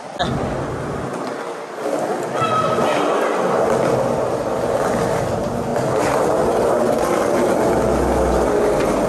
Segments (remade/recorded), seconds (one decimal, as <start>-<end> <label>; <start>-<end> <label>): 0.0-9.1 recorded